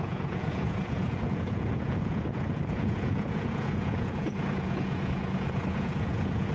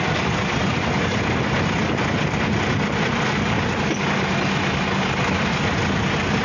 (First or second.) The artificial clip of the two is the first